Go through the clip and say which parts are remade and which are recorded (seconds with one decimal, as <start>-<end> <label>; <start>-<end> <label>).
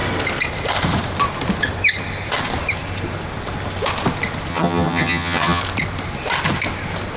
0.0-4.5 recorded; 4.5-5.6 remade; 5.6-7.2 recorded